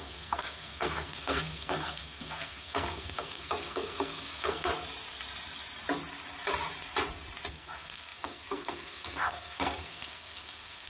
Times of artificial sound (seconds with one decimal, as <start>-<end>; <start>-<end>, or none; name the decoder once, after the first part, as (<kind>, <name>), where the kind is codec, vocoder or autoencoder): 0.0-4.7 (codec, SNAC); 7.5-10.9